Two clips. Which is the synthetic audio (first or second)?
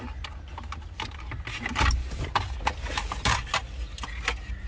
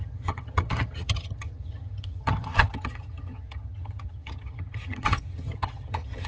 second